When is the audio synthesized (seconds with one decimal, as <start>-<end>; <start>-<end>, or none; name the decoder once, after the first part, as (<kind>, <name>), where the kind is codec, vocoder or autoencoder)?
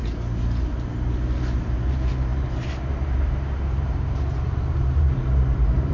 1.6-5.9 (vocoder, BigVGAN v2)